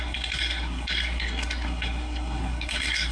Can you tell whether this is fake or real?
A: fake